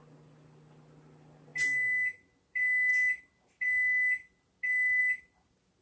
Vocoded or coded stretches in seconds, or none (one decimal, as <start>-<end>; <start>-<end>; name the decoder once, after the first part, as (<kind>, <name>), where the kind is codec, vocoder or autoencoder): none